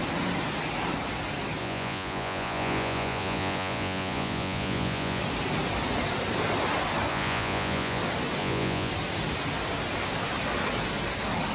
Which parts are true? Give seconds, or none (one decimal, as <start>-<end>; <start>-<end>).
0.0-1.6; 5.2-7.1; 8.0-8.4; 8.9-11.5

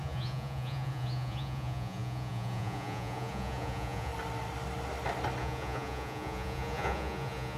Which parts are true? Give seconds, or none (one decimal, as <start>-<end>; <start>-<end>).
4.1-5.4

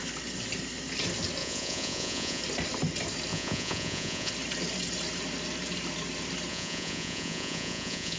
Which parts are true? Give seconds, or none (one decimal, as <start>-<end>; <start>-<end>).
0.0-1.4; 2.4-3.3; 4.3-6.5

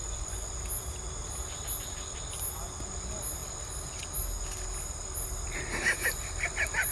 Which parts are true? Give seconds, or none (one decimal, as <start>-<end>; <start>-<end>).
0.5-6.9

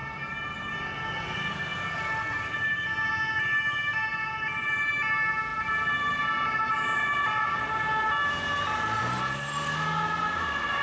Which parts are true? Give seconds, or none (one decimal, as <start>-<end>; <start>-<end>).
0.0-10.8